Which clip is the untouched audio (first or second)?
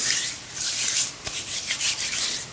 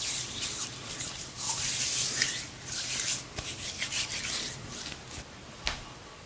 second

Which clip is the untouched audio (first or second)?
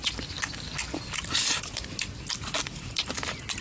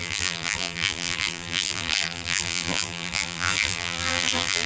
first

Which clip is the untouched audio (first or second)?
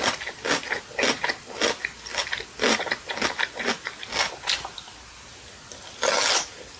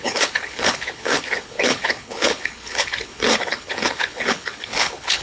first